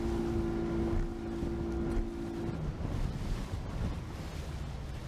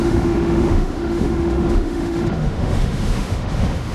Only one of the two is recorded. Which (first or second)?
first